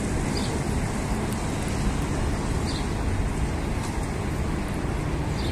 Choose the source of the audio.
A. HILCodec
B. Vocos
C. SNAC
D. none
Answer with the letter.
D